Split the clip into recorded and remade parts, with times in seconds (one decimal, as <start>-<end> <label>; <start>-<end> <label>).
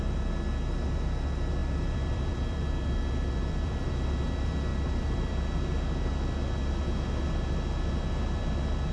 0.0-1.6 recorded; 1.6-3.9 remade; 3.9-4.7 recorded; 4.7-5.3 remade; 5.3-8.9 recorded